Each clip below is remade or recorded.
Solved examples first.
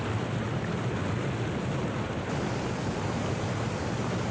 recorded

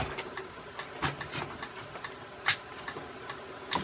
recorded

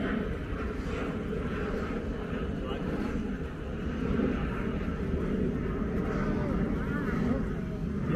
recorded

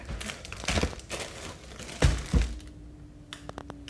recorded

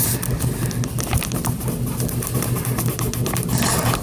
recorded